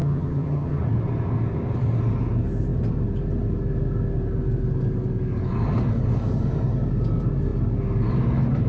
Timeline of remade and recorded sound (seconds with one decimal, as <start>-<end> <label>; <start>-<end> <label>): 0.0-0.8 remade; 0.8-8.7 recorded